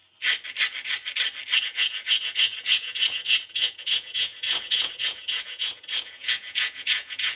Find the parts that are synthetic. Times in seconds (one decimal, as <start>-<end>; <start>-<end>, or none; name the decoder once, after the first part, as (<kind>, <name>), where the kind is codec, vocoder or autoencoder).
1.6-7.4 (vocoder, Vocos)